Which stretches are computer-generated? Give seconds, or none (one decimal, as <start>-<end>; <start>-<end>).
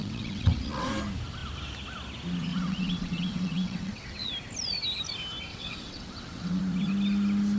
0.0-0.9; 2.5-4.3; 5.5-6.6